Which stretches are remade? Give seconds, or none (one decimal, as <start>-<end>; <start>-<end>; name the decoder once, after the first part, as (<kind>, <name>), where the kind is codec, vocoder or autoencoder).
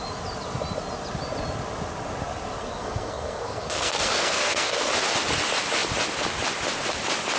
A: 2.6-4.9 (codec, SNAC)